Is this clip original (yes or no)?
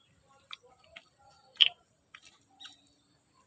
no